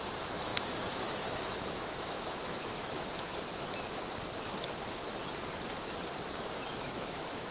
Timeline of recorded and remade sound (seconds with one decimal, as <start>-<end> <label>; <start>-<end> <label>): 0.0-3.3 remade; 3.3-6.7 recorded; 6.7-7.5 remade